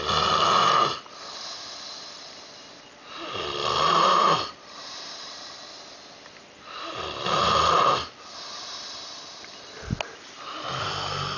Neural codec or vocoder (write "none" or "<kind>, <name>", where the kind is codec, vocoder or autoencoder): none